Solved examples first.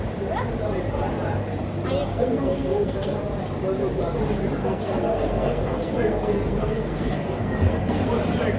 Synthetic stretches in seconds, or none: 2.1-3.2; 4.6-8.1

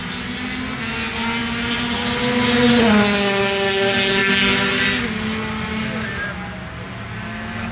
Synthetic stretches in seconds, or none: none

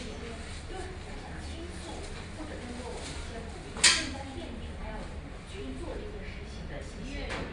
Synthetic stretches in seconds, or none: none

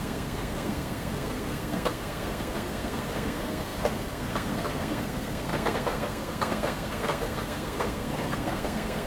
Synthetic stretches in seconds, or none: 0.0-9.1

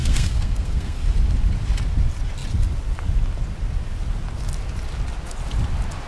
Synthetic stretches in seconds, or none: 0.0-1.0

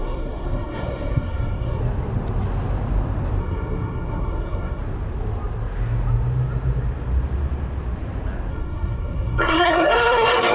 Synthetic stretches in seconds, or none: 0.0-1.8; 3.4-4.8; 8.5-10.5

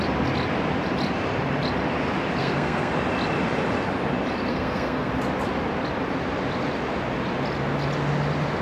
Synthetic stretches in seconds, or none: 2.4-2.9; 4.5-5.1

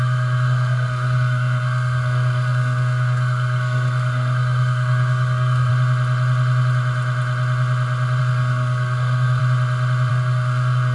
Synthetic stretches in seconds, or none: 0.0-5.7; 8.2-9.4; 10.1-10.9